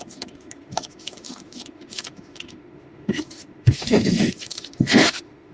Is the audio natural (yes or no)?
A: no